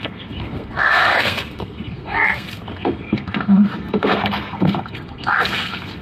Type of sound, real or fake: fake